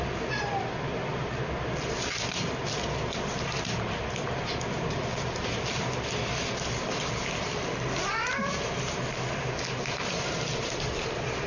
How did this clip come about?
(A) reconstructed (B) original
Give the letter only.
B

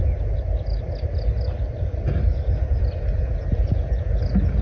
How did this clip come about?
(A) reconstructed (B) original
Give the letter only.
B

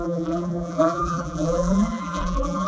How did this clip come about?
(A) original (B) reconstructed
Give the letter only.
B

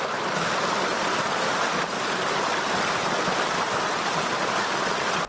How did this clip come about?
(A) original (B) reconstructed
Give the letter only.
A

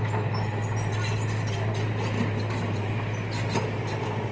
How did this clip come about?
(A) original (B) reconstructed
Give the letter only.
A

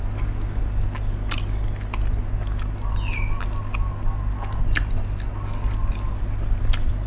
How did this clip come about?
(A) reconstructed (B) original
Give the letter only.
B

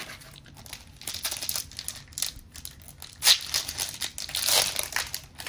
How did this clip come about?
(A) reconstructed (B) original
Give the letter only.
B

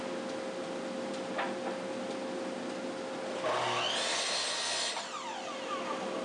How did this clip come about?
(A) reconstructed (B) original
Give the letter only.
B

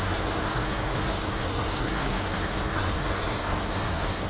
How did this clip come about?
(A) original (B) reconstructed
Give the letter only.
B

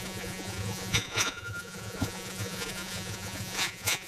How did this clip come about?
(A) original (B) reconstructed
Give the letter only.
B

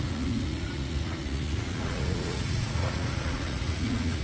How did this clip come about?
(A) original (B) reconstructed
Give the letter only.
B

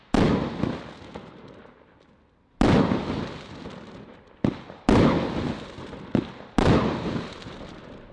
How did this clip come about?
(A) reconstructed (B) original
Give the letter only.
B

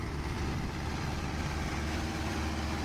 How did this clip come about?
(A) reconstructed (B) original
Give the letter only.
A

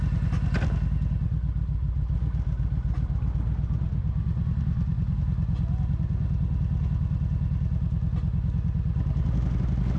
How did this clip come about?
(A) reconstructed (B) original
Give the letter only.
B